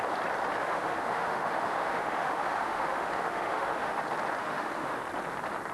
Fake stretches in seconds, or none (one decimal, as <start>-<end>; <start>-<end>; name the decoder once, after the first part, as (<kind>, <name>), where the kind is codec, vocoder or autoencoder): 0.6-4.0 (autoencoder, DAC-VAE); 4.4-5.0